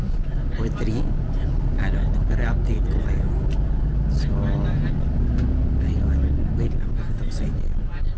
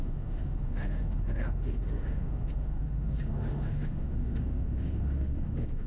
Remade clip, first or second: second